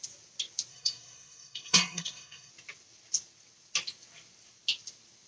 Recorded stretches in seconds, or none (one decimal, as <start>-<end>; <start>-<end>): 0.0-0.7; 2.5-5.3